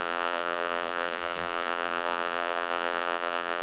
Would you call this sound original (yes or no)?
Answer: no